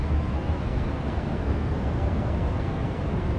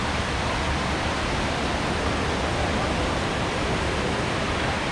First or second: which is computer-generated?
first